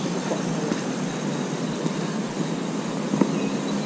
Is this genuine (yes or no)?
yes